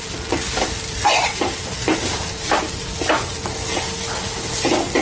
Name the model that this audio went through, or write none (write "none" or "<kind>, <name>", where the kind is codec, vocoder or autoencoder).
none